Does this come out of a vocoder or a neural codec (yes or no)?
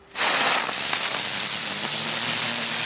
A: no